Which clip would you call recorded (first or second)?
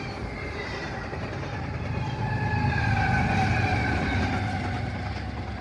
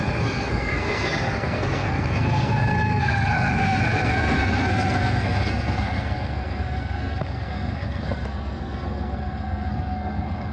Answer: first